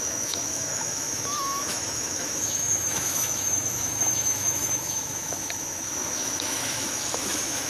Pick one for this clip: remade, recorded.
remade